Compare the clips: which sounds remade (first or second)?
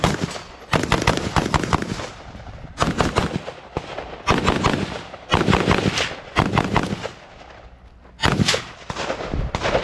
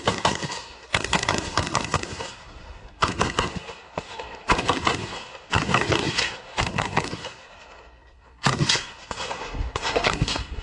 second